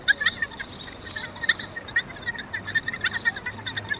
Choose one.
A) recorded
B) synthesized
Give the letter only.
A